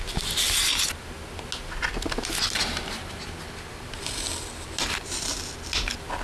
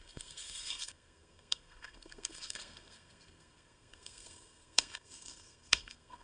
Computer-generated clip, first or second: second